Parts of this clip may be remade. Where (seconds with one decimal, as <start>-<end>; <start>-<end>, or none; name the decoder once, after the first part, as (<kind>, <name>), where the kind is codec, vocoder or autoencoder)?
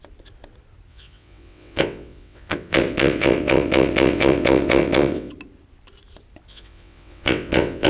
0.9-5.3 (vocoder, WaveNeXt); 6.5-7.9